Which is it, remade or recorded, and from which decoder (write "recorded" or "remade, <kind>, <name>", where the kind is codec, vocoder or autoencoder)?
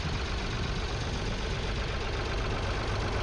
recorded